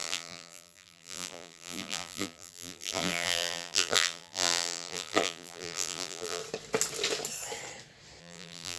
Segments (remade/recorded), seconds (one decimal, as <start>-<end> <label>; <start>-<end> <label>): 0.0-6.4 remade; 6.4-8.2 recorded; 8.2-8.8 remade